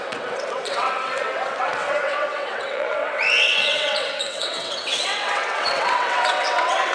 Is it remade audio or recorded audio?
remade